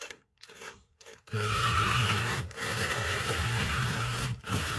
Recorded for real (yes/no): no